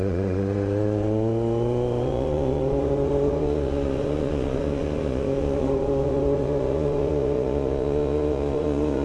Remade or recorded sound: remade